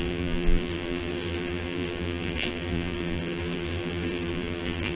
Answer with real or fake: fake